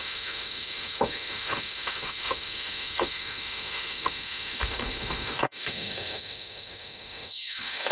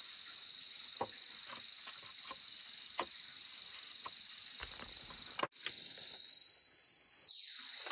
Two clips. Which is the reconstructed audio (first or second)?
first